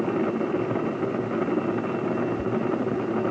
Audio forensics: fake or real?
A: real